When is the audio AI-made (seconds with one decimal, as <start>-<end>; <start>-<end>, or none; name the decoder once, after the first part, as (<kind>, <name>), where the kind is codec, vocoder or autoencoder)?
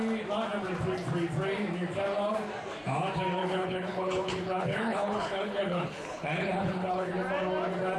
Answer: 3.4-7.1 (codec, HILCodec)